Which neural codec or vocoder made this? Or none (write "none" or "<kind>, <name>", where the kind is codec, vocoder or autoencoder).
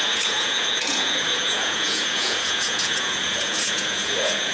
vocoder, Vocos